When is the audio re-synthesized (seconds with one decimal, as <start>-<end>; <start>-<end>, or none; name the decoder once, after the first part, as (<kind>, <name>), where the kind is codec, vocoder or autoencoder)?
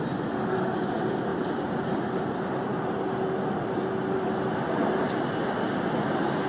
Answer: none